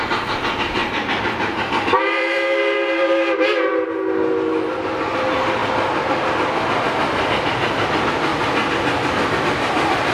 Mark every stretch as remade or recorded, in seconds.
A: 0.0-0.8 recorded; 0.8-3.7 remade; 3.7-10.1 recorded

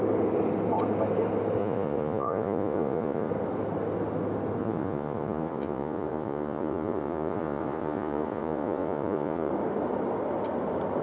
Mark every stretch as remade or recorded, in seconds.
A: 0.0-1.6 recorded; 1.6-3.3 remade; 3.3-4.6 recorded; 4.6-9.5 remade; 9.5-11.0 recorded

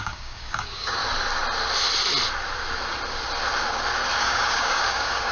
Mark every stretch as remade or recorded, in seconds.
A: 0.0-1.0 remade; 1.0-4.2 recorded; 4.2-5.3 remade

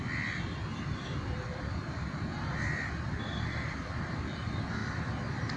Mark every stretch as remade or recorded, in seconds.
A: 0.0-0.7 recorded; 0.7-2.5 remade; 2.5-4.8 recorded; 4.8-5.6 remade